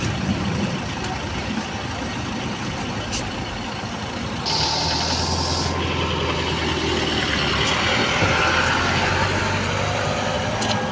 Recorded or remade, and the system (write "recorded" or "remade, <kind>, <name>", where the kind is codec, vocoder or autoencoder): recorded